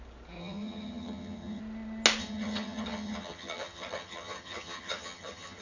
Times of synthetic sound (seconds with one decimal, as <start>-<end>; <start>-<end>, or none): 0.4-1.6; 2.2-5.6